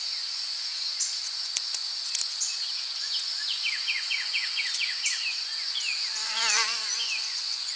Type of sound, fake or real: fake